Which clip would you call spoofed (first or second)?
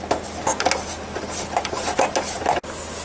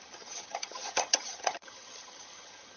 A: second